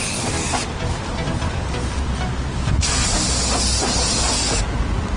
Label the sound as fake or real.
real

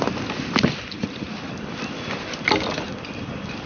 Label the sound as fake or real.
real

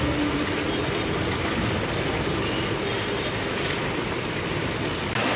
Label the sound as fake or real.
real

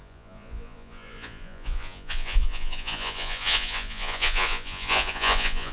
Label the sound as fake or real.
fake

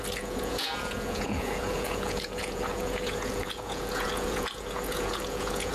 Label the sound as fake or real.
fake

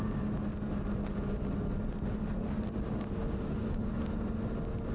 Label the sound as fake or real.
real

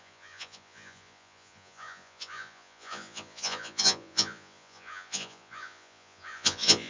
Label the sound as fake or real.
fake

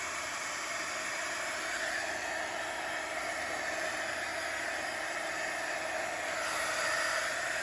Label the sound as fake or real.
real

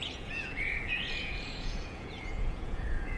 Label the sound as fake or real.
fake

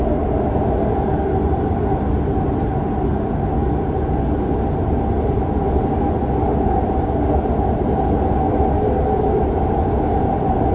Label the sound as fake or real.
real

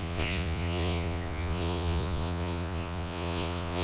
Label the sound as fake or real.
fake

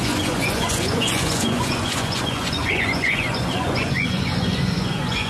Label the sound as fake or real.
fake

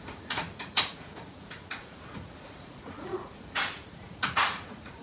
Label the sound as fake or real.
fake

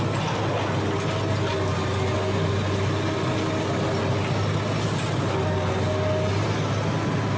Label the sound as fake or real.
real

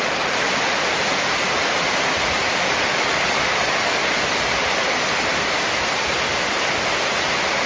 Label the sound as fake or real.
real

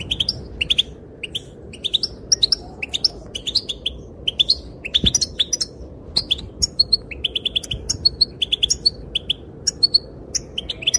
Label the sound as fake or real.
real